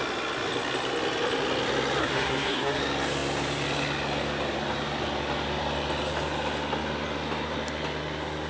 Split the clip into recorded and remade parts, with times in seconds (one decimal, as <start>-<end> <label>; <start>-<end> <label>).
0.0-2.0 recorded; 2.0-2.8 remade; 2.8-8.5 recorded